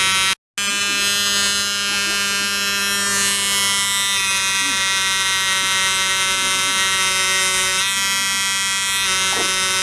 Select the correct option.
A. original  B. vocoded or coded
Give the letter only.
A